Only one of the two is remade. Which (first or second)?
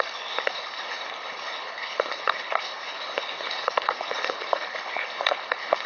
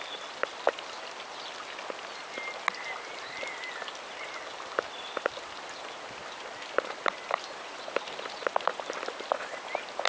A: first